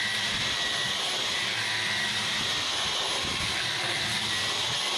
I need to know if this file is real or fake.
real